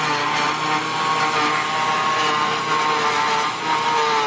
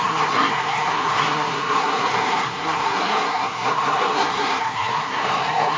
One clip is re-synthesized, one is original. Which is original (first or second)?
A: first